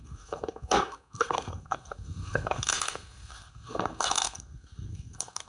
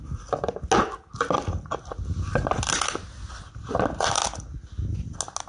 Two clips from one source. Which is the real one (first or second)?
second